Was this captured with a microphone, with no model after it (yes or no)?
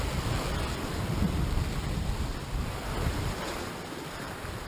yes